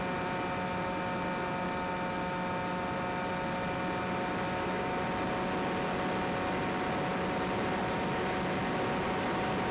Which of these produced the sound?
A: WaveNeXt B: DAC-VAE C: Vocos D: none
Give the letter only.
D